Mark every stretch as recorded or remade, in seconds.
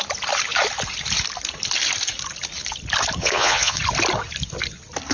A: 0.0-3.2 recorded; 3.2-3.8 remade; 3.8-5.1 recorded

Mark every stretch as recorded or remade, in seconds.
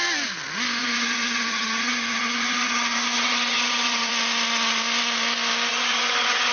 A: 0.0-0.8 recorded; 0.8-4.1 remade; 4.1-5.7 recorded; 5.7-6.5 remade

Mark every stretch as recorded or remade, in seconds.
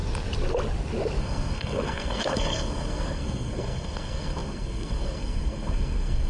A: 0.0-1.2 recorded; 1.2-6.3 remade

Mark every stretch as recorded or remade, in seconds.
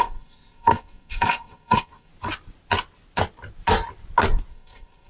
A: 0.0-2.1 remade; 2.1-4.5 recorded; 4.5-5.1 remade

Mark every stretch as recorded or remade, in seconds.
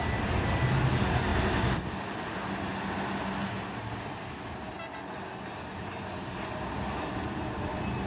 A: 0.0-8.1 recorded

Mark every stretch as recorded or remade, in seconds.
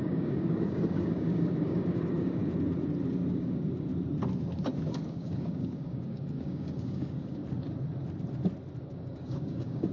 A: 0.0-2.4 remade; 2.4-3.3 recorded; 3.3-3.9 remade; 3.9-5.1 recorded; 5.1-7.4 remade; 7.4-8.8 recorded; 8.8-9.9 remade